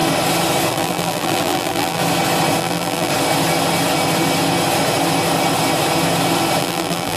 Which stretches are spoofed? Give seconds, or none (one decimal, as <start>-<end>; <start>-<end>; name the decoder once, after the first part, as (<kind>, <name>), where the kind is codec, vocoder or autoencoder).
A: 0.7-2.0 (vocoder, BigVGAN v2); 2.6-3.1; 6.6-7.2